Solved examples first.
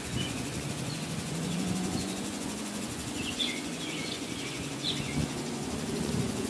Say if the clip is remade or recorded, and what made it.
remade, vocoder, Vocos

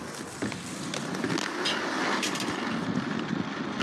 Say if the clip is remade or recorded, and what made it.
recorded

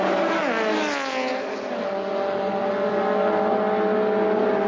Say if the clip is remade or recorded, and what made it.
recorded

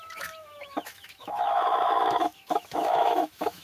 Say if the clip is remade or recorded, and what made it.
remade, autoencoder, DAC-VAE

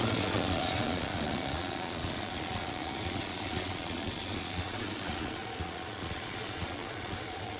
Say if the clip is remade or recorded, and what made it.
remade, vocoder, Vocos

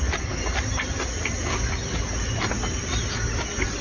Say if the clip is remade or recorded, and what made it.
recorded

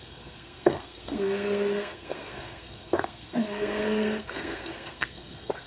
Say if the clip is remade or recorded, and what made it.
remade, codec, SNAC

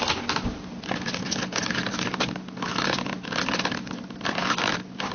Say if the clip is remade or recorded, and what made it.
recorded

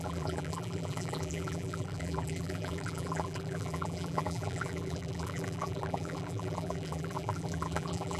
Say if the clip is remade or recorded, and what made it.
remade, vocoder, BigVGAN v2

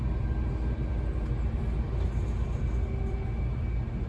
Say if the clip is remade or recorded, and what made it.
recorded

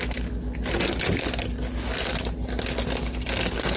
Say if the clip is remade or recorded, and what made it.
recorded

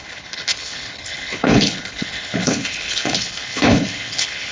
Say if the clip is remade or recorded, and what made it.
remade, codec, HILCodec